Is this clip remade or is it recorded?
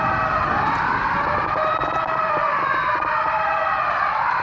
recorded